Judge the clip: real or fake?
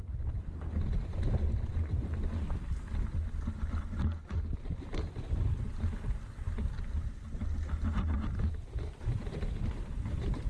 real